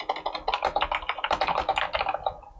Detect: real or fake real